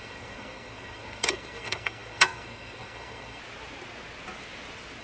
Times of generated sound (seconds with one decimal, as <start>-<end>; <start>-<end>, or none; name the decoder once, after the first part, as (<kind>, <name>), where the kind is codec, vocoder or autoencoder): 0.0-3.4 (codec, SNAC)

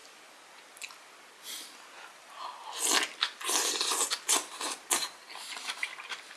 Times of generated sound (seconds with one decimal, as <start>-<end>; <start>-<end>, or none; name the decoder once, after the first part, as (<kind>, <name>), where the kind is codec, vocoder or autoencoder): none

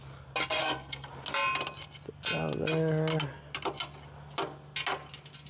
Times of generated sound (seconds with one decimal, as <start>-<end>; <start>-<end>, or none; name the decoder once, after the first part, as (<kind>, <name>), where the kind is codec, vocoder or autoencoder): 0.6-1.1 (codec, SNAC)

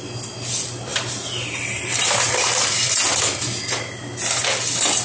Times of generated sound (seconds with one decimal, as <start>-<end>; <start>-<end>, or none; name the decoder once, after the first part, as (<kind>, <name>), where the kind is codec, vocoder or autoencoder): none

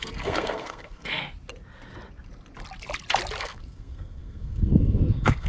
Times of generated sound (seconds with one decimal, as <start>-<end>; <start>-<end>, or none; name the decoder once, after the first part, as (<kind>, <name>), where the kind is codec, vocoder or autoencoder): 0.0-1.2 (codec, SNAC); 3.4-5.5

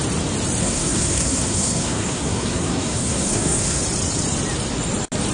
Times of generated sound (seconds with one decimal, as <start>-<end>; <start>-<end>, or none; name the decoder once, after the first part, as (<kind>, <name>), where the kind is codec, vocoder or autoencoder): 0.6-3.8 (codec, SNAC)

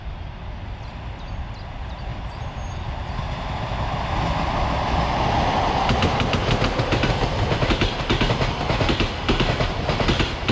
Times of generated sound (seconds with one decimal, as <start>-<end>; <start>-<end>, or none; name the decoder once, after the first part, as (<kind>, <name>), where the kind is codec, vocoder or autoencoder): none